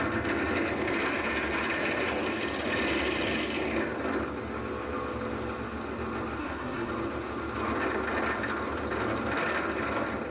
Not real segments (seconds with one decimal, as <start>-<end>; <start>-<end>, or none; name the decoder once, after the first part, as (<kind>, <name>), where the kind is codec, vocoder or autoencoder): 6.4-6.9 (codec, SNAC)